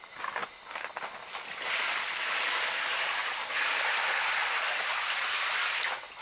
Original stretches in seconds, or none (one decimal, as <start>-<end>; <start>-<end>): 0.0-6.2